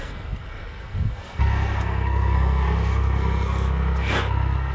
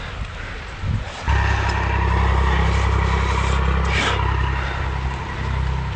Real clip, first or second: second